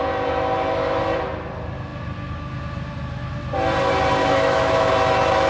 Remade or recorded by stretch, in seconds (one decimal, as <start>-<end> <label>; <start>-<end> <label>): 0.0-4.2 recorded; 4.2-4.9 remade; 4.9-5.5 recorded